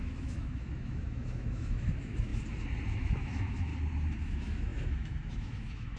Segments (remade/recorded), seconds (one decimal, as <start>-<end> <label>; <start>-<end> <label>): 0.0-2.3 remade; 2.3-2.9 recorded; 2.9-3.7 remade; 3.7-4.2 recorded; 4.2-6.0 remade